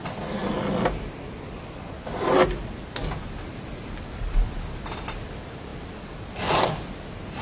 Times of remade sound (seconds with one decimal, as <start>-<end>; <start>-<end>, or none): none